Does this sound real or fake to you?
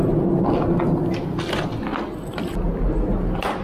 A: real